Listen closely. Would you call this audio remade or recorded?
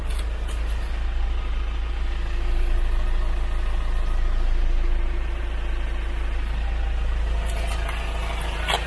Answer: recorded